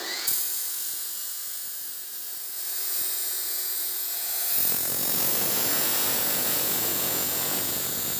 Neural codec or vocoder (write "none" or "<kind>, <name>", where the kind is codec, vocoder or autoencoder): vocoder, Vocos